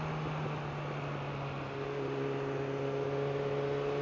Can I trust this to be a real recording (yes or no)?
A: yes